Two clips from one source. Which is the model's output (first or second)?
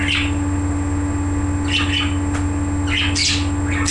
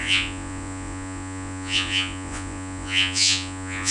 second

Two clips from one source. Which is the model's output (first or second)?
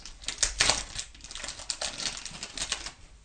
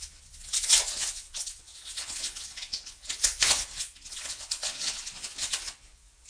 second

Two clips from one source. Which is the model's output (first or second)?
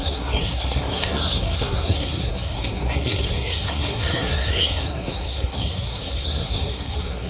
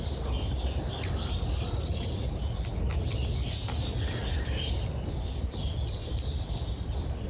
first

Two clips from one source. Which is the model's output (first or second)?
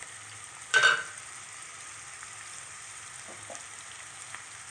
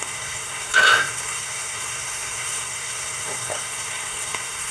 second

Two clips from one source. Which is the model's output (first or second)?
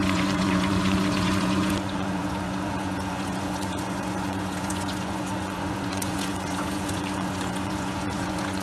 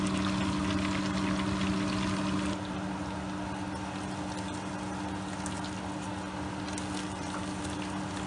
first